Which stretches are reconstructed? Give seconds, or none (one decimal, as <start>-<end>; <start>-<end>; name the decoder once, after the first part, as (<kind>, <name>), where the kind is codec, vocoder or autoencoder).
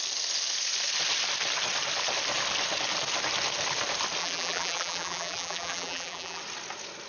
4.2-6.4 (vocoder, BigVGAN v2)